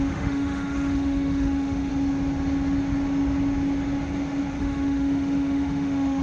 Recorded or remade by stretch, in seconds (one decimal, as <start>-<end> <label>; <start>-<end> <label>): 0.0-1.9 remade; 1.9-4.6 recorded; 4.6-6.2 remade